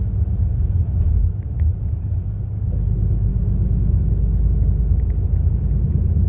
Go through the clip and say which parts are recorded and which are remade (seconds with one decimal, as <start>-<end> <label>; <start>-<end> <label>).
0.0-6.3 recorded